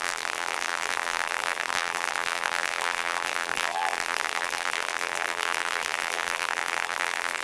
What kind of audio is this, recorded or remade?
remade